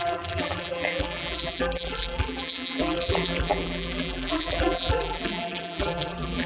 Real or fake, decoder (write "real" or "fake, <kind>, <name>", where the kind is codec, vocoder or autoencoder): fake, vocoder, BigVGAN v2